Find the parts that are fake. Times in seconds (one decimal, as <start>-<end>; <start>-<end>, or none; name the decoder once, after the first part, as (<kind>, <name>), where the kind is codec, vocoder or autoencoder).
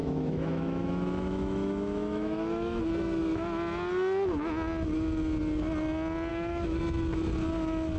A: 0.0-2.8 (autoencoder, DAC-VAE); 6.3-6.8